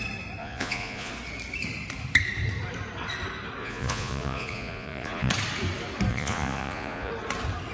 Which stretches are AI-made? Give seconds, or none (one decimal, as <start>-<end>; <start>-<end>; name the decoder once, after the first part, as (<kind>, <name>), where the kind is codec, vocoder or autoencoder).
0.4-1.1 (vocoder, Vocos); 3.6-5.3; 6.1-7.1